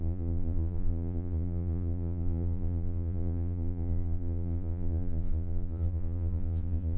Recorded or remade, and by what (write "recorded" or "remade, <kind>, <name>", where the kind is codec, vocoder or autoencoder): remade, vocoder, Vocos